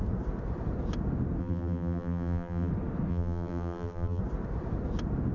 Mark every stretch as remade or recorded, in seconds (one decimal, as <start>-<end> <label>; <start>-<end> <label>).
0.0-1.4 recorded; 1.4-2.7 remade; 2.7-3.1 recorded; 3.1-4.2 remade; 4.2-5.3 recorded